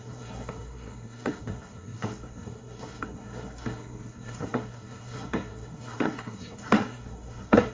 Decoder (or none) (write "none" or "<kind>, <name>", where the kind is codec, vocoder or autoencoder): codec, SNAC